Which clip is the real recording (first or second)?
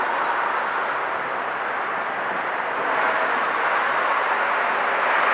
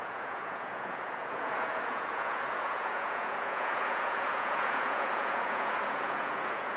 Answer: first